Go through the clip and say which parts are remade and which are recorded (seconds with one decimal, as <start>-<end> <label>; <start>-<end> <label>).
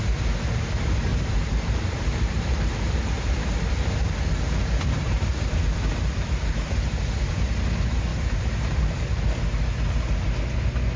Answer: 0.0-1.1 recorded; 1.1-3.6 remade; 3.6-4.6 recorded; 4.6-7.3 remade; 7.3-8.1 recorded; 8.1-9.0 remade; 9.0-11.0 recorded